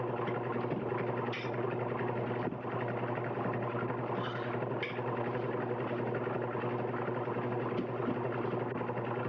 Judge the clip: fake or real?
real